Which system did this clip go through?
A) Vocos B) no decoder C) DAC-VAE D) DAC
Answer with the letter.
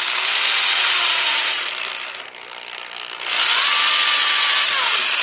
B